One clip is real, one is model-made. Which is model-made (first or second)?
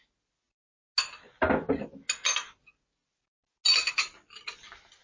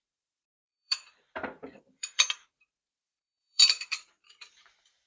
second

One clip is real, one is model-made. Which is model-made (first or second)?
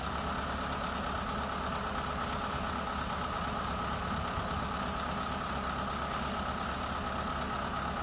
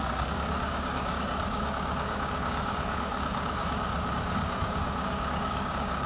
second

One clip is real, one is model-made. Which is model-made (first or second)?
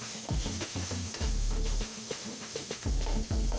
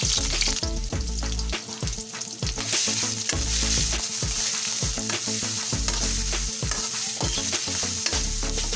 first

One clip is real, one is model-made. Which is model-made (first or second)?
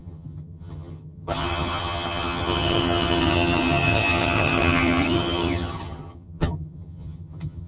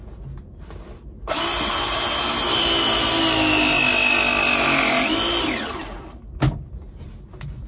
first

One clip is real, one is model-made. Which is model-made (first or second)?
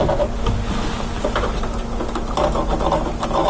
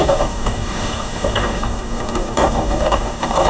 second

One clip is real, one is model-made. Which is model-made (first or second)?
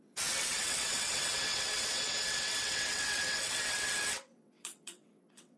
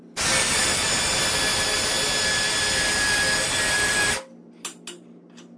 first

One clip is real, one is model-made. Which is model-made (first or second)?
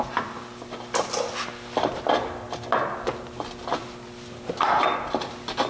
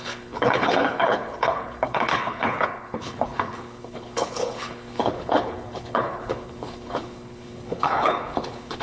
second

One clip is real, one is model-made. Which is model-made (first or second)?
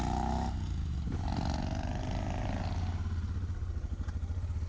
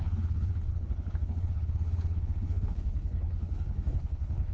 second